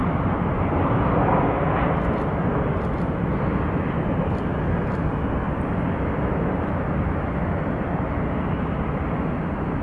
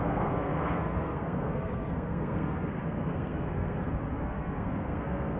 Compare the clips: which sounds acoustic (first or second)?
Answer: first